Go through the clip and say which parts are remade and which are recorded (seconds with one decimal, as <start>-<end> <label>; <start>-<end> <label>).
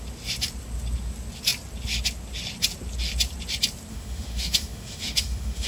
0.0-3.9 recorded; 3.9-5.7 remade